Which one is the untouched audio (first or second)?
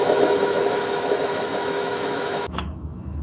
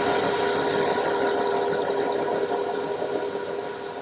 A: second